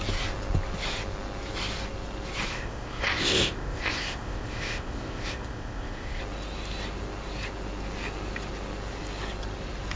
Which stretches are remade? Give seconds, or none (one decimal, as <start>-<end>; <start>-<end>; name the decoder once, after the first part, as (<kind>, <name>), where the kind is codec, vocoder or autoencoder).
2.5-6.2 (codec, ZipCodec)